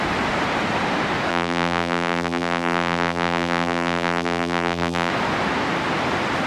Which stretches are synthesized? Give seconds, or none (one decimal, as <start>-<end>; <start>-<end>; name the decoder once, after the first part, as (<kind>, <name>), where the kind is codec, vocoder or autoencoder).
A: 1.3-5.1 (vocoder, BigVGAN v2)